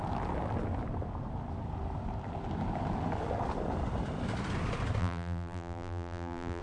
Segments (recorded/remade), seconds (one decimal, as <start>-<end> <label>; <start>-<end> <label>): 0.0-5.0 recorded; 5.0-6.6 remade